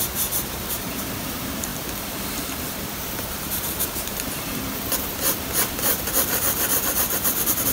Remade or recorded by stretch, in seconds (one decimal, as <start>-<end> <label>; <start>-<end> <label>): 0.0-7.7 remade